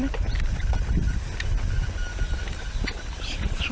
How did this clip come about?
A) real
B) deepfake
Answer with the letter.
A